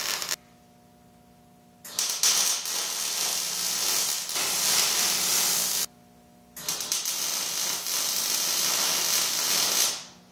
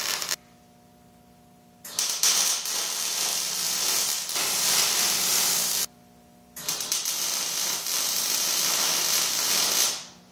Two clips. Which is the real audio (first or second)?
first